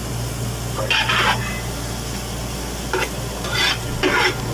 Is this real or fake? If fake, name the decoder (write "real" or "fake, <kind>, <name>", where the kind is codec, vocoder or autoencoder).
real